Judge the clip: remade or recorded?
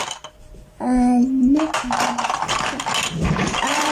recorded